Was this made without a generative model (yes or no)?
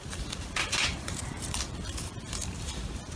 no